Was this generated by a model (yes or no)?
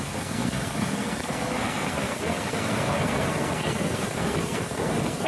yes